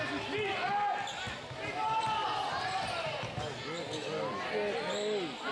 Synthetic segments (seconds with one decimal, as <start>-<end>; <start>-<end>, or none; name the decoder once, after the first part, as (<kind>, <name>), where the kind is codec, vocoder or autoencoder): none